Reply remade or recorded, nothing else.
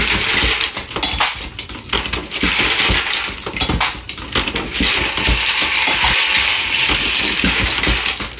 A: recorded